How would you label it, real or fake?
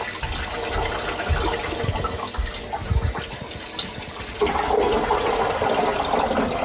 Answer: real